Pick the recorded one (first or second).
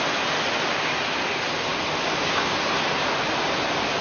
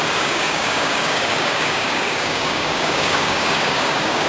first